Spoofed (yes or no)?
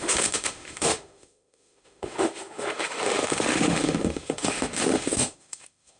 yes